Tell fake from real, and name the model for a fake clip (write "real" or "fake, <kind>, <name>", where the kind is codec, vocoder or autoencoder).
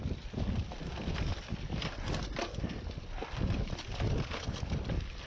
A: real